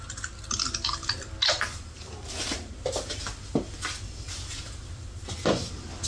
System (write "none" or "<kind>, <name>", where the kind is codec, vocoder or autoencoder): none